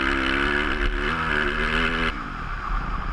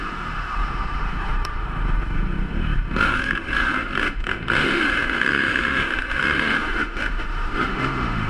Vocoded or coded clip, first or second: second